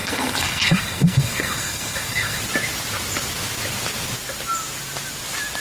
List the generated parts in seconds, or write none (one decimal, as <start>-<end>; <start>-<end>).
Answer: 0.0-2.4